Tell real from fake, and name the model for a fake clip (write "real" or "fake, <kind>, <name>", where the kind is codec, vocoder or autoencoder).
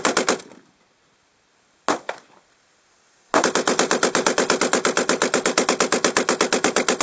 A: real